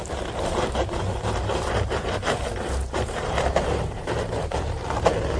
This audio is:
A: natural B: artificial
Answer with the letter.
B